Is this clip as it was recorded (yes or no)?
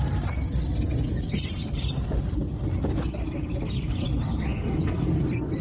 yes